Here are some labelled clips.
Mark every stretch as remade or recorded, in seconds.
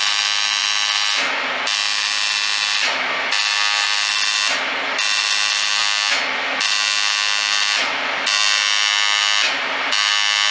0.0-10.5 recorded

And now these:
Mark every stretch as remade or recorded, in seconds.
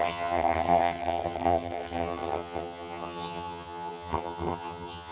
0.0-5.1 remade